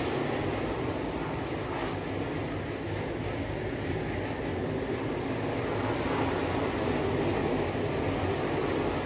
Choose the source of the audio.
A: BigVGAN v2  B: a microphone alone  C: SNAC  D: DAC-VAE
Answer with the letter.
B